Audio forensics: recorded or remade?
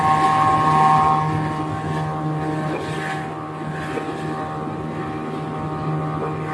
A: recorded